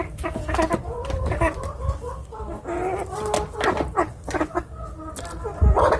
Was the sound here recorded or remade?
recorded